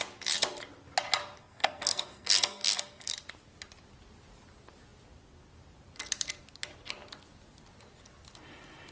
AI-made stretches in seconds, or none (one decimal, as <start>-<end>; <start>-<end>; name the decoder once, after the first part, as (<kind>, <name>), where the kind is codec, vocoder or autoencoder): 1.4-3.1 (codec, SNAC)